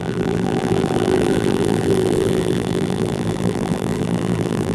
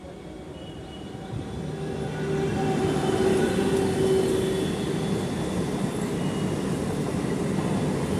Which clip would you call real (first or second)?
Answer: second